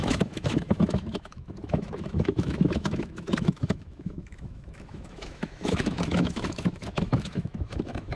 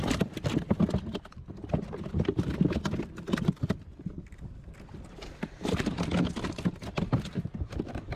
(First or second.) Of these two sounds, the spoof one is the first